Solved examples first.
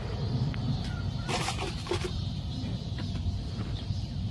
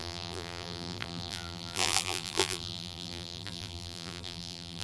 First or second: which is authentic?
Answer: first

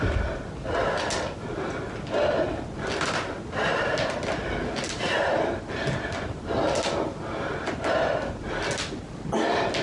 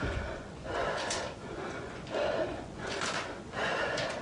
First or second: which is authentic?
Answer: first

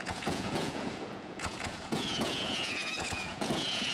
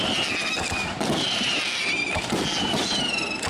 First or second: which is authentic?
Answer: second